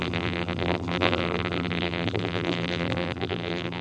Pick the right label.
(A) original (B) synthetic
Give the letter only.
B